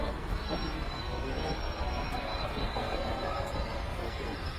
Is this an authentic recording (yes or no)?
no